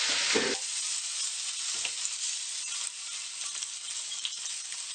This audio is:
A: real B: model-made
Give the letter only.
A